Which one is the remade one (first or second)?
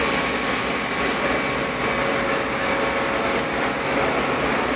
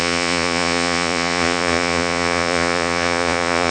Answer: second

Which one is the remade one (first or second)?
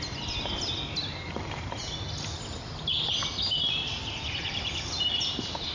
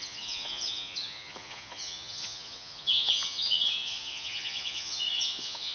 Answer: second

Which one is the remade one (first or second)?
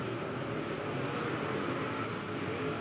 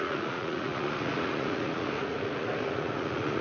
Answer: second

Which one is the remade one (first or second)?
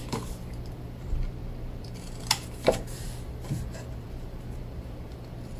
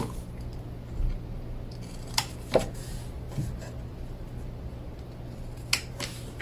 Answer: first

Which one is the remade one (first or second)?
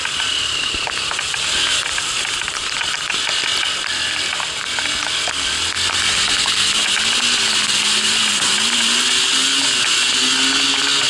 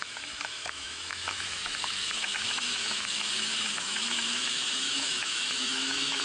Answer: second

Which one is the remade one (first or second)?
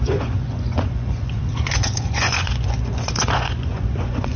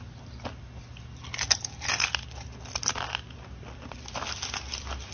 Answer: first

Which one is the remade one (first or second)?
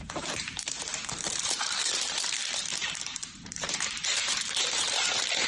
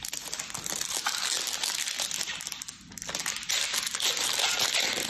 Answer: first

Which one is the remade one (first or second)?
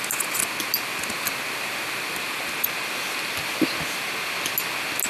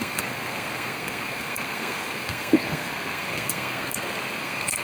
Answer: second